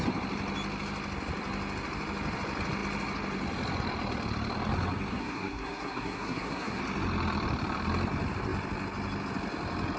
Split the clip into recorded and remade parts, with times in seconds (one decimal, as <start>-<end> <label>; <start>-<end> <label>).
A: 0.0-5.1 recorded; 5.1-6.8 remade; 6.8-10.0 recorded